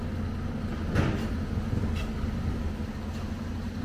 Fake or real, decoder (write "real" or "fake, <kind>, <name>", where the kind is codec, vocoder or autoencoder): real